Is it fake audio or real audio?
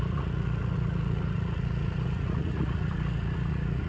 fake